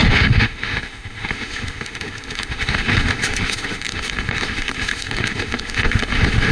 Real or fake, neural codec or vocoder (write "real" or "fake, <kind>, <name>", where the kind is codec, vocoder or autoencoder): fake, autoencoder, DAC-VAE